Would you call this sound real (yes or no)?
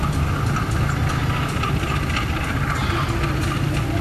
yes